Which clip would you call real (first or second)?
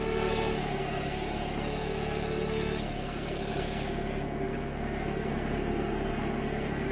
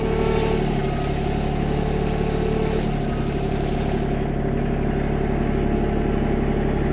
second